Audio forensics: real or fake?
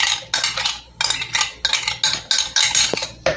real